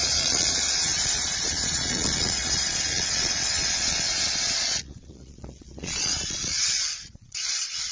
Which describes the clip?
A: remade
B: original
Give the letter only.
A